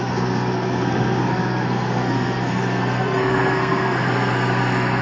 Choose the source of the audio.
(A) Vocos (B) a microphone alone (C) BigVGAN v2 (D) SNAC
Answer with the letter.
D